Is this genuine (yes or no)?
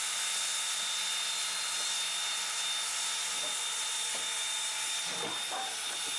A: yes